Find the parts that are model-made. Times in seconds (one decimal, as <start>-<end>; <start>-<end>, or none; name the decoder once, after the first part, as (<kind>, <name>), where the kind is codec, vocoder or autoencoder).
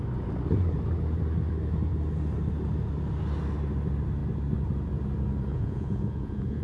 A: 5.5-6.6 (vocoder, Vocos)